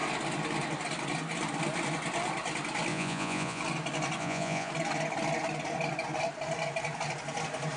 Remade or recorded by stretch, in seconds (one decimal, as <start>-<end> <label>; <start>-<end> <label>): 0.0-2.9 recorded; 2.9-3.6 remade; 3.6-4.2 recorded; 4.2-4.7 remade; 4.7-7.8 recorded